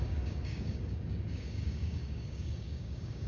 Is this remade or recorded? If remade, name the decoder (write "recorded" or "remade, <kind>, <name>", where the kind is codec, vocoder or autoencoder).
remade, codec, DAC